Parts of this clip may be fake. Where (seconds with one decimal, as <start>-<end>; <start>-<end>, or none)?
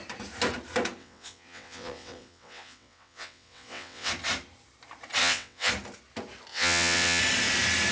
1.0-4.1; 5.2-5.7; 6.5-7.2